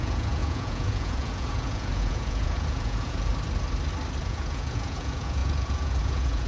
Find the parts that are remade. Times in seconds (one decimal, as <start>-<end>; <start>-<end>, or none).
0.0-3.3; 4.2-6.5